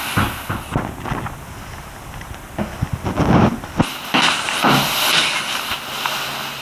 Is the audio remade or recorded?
recorded